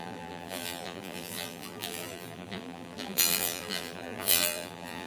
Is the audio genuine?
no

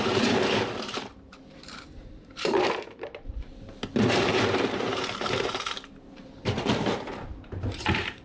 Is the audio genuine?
no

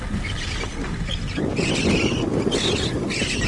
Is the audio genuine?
yes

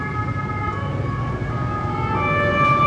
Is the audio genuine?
yes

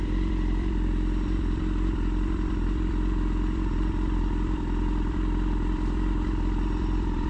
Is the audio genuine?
no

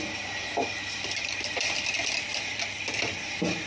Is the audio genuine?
no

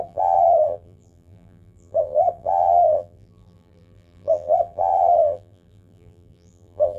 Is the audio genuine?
no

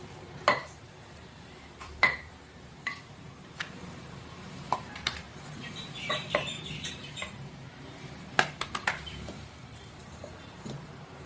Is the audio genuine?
no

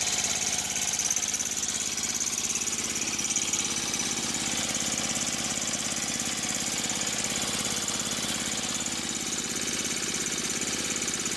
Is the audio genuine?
yes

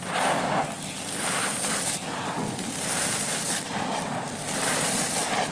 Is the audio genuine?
no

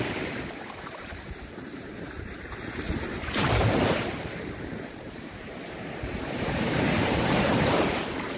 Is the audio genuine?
no